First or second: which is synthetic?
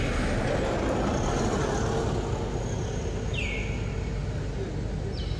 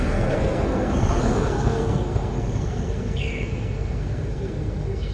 second